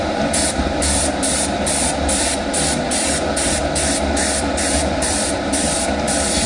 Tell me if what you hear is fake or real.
fake